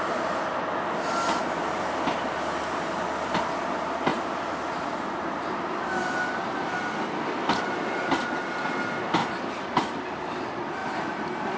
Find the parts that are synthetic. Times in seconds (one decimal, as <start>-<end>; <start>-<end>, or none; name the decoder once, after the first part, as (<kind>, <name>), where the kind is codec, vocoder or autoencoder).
4.1-5.6 (vocoder, BigVGAN v2); 9.2-10.4; 10.8-11.6